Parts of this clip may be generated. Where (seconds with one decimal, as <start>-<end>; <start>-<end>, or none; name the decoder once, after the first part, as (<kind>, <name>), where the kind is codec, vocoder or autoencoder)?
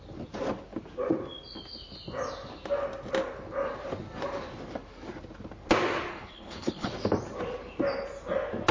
6.1-6.9 (codec, HILCodec)